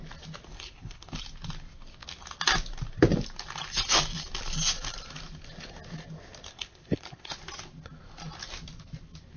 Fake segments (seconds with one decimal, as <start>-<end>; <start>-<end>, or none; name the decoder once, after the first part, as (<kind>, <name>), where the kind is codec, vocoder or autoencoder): 0.5-1.1 (codec, HILCodec); 6.5-7.3